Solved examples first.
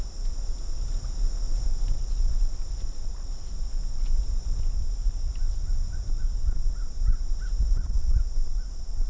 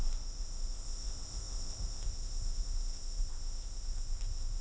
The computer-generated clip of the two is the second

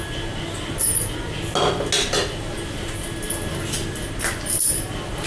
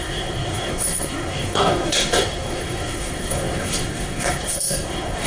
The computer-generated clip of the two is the second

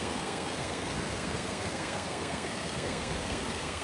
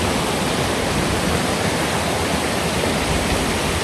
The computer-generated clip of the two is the first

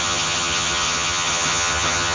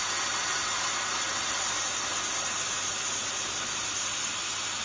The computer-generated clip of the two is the first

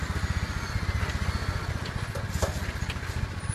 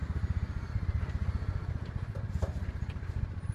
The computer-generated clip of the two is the second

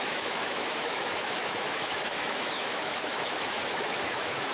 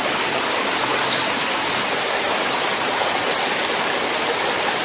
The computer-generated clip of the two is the first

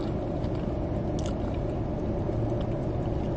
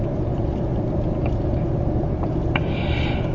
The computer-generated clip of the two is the second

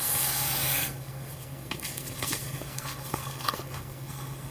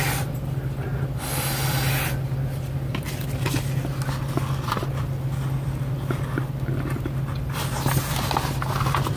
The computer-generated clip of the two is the first